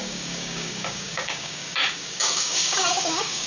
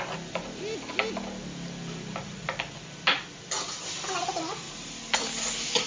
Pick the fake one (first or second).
first